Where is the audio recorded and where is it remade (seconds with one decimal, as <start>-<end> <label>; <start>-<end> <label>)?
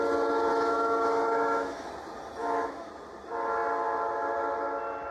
0.0-0.5 recorded; 0.5-1.9 remade; 1.9-2.4 recorded; 2.4-2.9 remade; 2.9-5.1 recorded